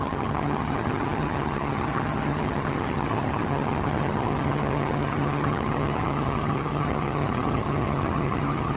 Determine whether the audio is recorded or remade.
remade